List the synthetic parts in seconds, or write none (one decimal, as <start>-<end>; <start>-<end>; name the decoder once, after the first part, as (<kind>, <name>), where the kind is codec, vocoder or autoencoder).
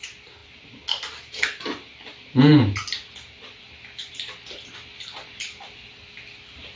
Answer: none